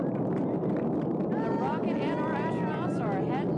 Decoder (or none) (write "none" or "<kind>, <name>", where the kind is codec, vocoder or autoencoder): none